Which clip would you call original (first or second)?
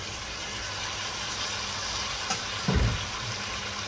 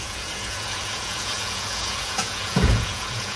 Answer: first